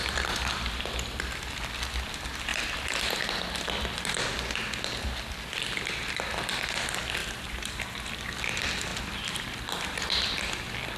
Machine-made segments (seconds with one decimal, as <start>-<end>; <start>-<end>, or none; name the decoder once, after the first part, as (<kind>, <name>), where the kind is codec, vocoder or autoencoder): 2.5-3.0 (vocoder, BigVGAN v2); 7.2-8.1